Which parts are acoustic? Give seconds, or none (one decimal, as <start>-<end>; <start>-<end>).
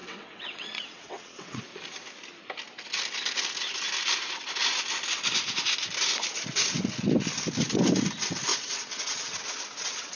1.6-8.5